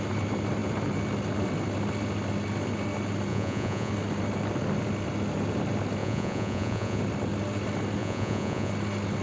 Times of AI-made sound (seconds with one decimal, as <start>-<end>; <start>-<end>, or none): 3.3-3.9; 6.0-7.0; 8.0-8.7